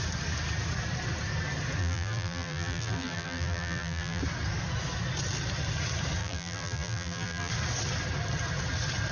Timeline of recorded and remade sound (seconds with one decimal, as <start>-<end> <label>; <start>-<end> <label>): 0.0-1.8 recorded; 1.8-4.2 remade; 4.2-6.2 recorded; 6.2-7.5 remade; 7.5-9.1 recorded